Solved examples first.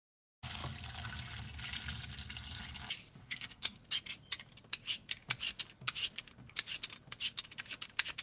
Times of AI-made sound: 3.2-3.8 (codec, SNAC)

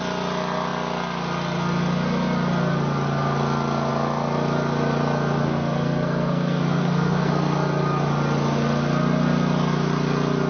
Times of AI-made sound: 5.4-7.3 (codec, SNAC)

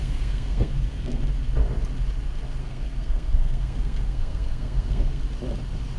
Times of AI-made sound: 0.0-1.2 (codec, SNAC); 2.6-5.2

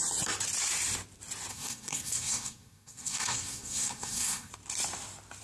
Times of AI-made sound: 1.5-4.5 (codec, SNAC)

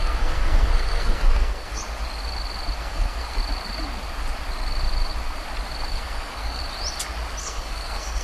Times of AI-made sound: 0.0-1.8 (codec, SNAC); 2.8-3.4; 5.9-6.6; 7.4-8.2

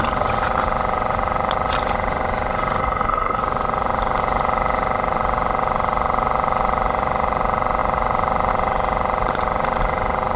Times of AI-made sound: 2.8-3.4 (codec, SNAC)